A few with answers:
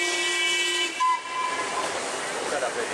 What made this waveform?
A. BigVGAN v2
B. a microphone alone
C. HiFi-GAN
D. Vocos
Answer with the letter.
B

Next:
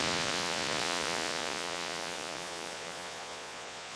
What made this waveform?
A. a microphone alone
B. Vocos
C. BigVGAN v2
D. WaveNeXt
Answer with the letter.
B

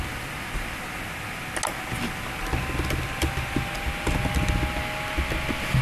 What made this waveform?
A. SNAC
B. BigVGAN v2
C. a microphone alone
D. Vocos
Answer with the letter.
C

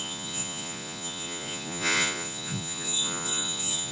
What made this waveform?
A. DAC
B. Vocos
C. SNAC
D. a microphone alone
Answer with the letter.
B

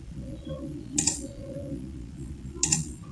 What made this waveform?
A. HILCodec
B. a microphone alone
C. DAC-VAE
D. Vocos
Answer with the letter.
D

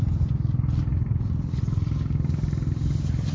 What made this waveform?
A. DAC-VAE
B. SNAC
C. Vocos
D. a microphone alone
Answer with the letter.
D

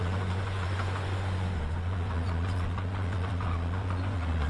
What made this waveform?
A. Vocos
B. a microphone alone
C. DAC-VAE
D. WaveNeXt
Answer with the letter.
A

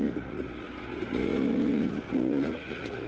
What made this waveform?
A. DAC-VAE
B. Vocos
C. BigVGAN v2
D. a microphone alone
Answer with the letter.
B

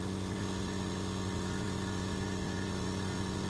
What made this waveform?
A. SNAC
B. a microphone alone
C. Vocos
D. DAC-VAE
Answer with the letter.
B